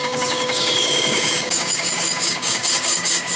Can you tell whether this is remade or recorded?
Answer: remade